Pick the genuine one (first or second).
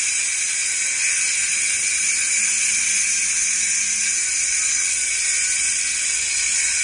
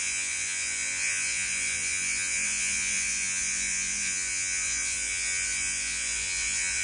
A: first